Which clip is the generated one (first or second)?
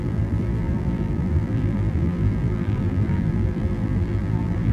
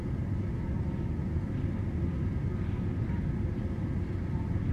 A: first